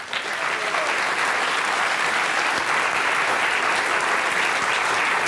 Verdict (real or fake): real